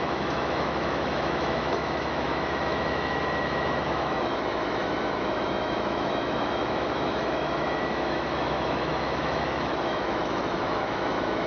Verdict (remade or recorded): remade